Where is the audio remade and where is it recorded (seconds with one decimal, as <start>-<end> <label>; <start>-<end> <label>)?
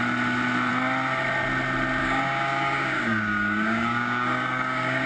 0.0-2.0 recorded; 2.0-5.1 remade